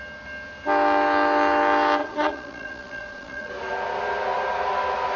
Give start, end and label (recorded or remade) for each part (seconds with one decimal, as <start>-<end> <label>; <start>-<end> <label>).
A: 0.0-2.0 recorded; 2.0-3.5 remade; 3.5-5.2 recorded